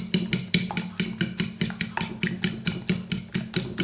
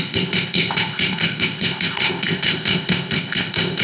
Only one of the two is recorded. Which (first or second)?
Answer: first